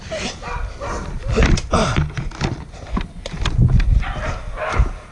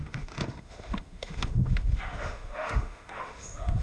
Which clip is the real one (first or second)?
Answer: first